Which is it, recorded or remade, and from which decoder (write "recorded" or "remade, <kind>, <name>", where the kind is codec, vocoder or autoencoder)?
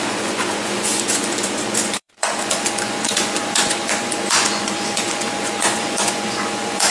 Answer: remade, vocoder, Vocos